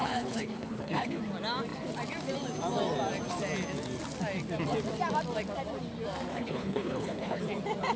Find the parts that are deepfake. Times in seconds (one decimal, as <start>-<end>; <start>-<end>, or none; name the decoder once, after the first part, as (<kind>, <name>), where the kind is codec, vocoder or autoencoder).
0.0-1.2 (codec, HILCodec); 6.3-7.4